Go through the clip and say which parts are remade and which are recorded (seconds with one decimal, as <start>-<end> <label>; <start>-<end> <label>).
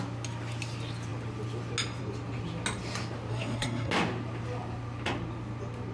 0.0-3.3 recorded; 3.3-3.9 remade; 3.9-5.9 recorded